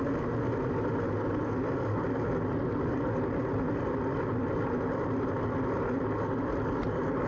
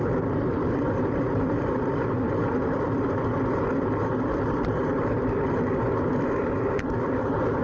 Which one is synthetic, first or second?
second